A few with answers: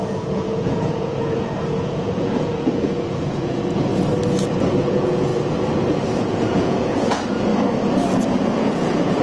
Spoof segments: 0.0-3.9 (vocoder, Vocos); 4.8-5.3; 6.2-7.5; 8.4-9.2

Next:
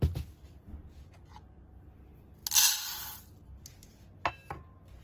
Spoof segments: none